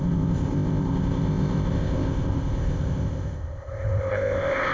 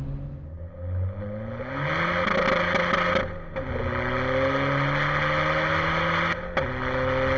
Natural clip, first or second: second